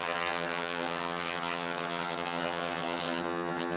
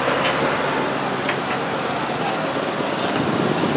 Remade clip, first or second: first